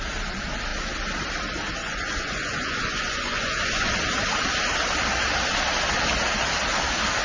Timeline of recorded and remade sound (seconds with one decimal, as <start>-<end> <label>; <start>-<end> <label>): 0.0-1.8 recorded; 1.8-3.9 remade; 3.9-7.2 recorded